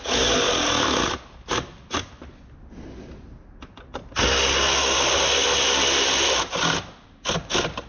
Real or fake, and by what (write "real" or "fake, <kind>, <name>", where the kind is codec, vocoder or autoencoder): real